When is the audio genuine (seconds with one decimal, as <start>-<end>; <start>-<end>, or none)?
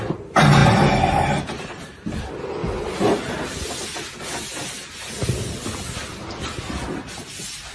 0.0-7.7